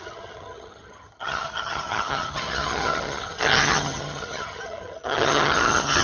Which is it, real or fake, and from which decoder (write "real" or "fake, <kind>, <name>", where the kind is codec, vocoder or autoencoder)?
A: fake, vocoder, HiFi-GAN